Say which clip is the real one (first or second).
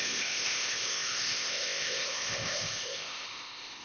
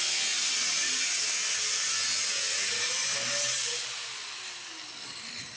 second